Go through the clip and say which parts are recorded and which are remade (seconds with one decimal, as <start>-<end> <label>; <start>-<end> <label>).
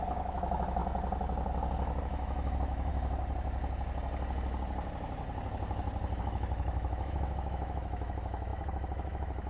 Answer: 0.0-0.8 remade; 0.8-2.0 recorded; 2.0-2.9 remade; 2.9-6.2 recorded; 6.2-9.5 remade